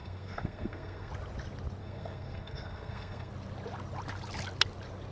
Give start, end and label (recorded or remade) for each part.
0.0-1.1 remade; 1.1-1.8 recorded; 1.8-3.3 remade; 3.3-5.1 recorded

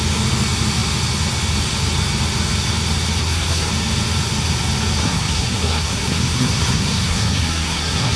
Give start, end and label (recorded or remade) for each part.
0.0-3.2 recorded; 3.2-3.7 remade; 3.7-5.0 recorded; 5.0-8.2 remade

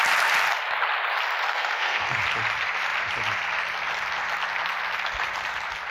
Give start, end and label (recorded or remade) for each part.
0.0-1.5 recorded; 1.5-2.2 remade; 2.2-5.9 recorded

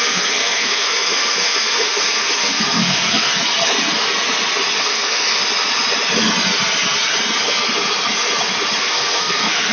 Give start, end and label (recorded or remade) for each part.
0.0-3.3 remade; 3.3-4.8 recorded; 4.8-5.4 remade; 5.4-8.8 recorded; 8.8-9.7 remade

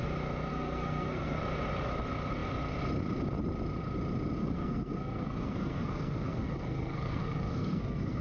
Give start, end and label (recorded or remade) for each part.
0.0-0.5 recorded; 0.5-1.4 remade; 1.4-4.4 recorded; 4.4-8.2 remade